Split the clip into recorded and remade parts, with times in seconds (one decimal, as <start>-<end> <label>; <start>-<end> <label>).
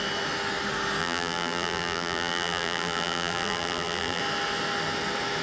0.0-1.0 recorded; 1.0-4.2 remade; 4.2-5.4 recorded